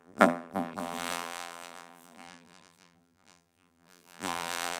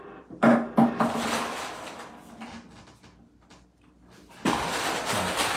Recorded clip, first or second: second